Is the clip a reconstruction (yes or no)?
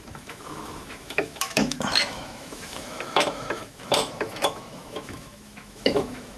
yes